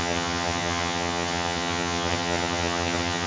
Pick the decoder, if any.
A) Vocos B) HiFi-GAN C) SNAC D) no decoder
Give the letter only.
B